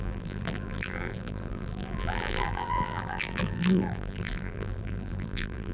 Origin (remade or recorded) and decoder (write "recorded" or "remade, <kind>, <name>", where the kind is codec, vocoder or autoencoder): remade, vocoder, BigVGAN v2